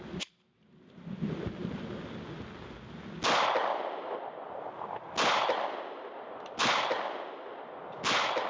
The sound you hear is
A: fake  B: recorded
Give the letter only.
B